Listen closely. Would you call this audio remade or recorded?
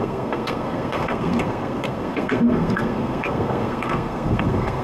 remade